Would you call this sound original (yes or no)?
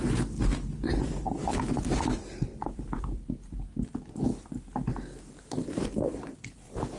no